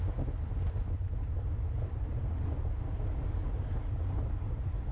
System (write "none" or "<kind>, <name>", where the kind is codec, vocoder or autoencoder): none